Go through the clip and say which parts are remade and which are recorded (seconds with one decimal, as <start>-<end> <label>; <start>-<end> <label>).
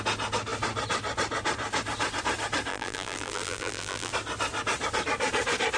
0.0-2.7 recorded; 2.7-4.1 remade; 4.1-5.8 recorded